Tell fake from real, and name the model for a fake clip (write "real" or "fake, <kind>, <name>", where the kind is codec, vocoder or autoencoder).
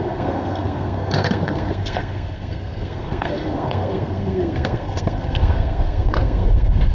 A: fake, codec, SNAC